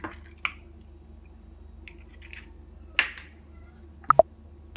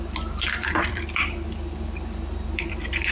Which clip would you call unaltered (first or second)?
first